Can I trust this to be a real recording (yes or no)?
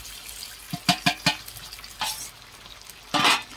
yes